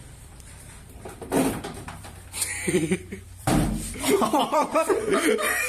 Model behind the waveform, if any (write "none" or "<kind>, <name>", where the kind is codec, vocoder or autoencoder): vocoder, BigVGAN v2